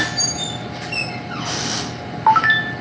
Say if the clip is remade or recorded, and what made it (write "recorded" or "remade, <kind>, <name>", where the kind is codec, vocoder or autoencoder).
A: recorded